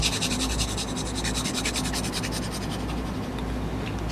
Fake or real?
real